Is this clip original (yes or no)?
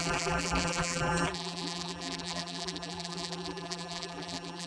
no